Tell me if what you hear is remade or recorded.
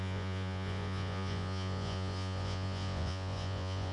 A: remade